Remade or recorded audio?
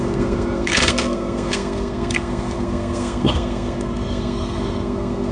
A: remade